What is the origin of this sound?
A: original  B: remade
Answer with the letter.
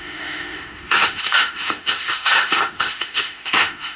B